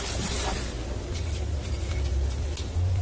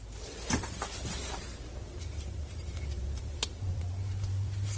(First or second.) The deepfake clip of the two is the second